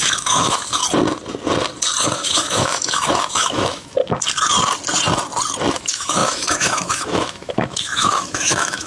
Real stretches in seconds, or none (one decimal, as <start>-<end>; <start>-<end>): 0.8-2.0; 4.0-5.7